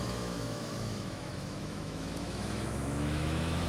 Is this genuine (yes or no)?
no